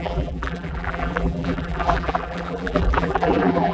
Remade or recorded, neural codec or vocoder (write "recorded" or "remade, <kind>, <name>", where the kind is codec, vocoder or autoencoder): remade, vocoder, BigVGAN v2